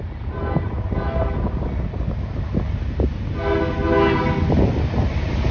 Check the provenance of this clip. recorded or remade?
recorded